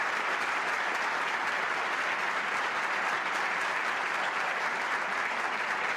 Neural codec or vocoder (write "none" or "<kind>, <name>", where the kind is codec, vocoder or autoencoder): vocoder, BigVGAN v2